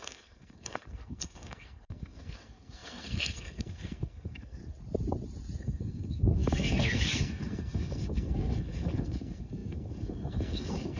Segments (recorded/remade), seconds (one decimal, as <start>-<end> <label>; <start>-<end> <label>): 0.0-4.6 remade; 4.6-5.6 recorded; 5.6-11.0 remade